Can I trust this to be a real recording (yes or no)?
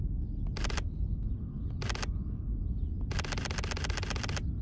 yes